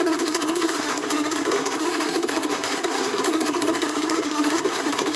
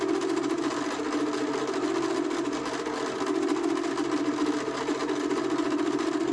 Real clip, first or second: second